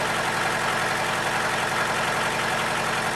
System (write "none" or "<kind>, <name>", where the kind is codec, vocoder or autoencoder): none